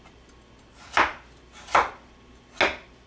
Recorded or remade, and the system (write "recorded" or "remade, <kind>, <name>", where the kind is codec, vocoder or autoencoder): recorded